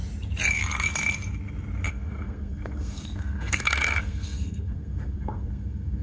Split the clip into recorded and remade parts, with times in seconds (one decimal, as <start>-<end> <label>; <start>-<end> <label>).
0.0-1.9 recorded; 1.9-6.0 remade